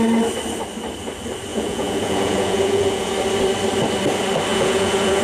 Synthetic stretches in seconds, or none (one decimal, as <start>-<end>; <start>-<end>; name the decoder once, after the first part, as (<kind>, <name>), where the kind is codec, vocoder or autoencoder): 1.5-3.1 (vocoder, Vocos); 4.5-5.2